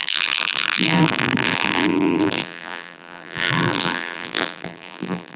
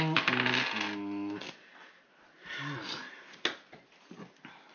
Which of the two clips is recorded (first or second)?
second